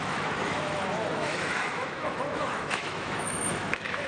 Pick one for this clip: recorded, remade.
remade